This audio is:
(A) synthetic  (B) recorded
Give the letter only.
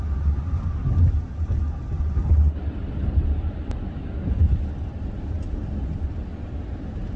B